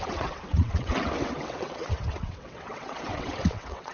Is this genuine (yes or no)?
no